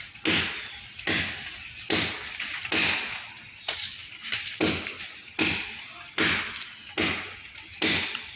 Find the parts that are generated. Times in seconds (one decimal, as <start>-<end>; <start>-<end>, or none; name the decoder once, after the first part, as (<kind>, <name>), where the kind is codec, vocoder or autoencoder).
none